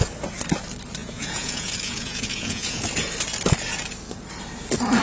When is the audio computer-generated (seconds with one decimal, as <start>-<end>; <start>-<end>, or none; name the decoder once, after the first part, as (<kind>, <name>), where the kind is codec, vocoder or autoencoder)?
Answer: 1.0-2.8 (vocoder, Vocos)